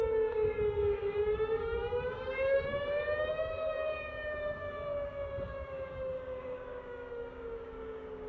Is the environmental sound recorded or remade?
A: remade